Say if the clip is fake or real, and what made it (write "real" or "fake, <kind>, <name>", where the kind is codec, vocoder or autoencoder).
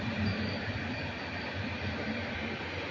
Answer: fake, vocoder, BigVGAN v2